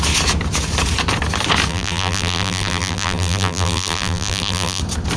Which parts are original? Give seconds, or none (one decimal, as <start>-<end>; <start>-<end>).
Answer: 0.0-1.7; 4.8-5.2